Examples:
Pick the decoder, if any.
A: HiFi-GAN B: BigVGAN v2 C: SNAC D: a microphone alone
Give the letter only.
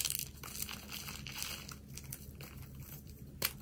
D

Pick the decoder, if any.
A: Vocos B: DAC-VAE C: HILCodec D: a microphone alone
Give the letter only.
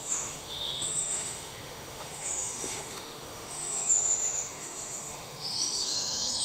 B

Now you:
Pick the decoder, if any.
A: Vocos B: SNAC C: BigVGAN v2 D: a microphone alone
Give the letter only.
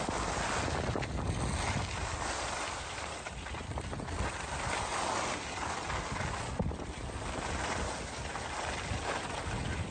D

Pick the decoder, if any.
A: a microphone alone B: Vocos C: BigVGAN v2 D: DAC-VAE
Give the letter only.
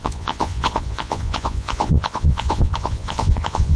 B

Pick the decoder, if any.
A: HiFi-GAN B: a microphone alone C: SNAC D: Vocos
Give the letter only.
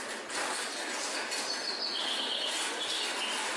B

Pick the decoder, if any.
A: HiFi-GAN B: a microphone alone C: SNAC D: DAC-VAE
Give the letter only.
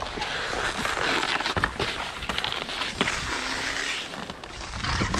B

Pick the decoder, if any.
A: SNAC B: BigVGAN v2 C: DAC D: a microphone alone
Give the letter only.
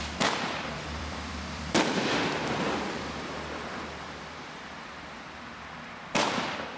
B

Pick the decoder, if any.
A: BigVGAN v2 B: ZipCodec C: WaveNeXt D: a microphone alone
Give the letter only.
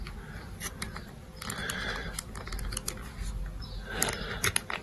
D